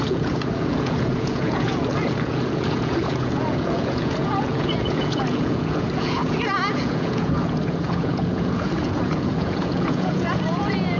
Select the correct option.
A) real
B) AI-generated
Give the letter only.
B